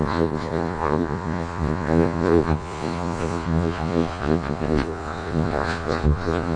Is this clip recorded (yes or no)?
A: no